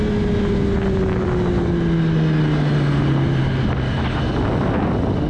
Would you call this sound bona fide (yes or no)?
yes